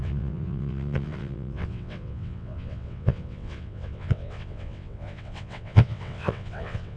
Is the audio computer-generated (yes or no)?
yes